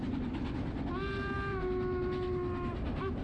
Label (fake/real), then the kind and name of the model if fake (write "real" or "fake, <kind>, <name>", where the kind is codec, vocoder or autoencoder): real